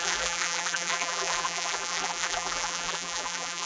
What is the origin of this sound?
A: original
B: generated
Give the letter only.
B